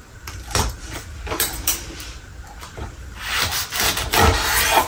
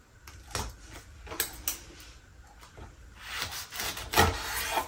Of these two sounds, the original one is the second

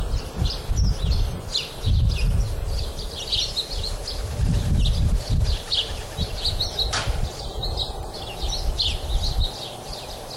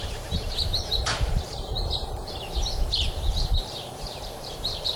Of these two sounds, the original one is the first